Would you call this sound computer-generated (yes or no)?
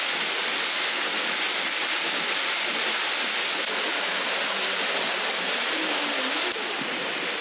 no